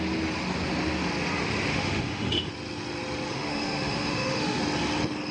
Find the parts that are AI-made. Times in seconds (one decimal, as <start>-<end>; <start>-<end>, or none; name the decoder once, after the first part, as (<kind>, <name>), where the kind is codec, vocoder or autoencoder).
1.7-2.5 (autoencoder, DAC-VAE); 3.3-4.6

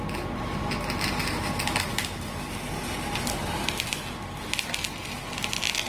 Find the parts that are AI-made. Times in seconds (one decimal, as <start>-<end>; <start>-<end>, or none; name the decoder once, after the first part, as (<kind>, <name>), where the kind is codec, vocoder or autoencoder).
none

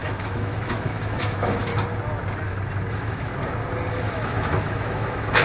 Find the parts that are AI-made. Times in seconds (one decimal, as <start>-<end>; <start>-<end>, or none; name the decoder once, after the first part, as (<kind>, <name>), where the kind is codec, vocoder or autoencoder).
0.0-1.7 (autoencoder, DAC-VAE); 2.9-3.3; 3.9-5.4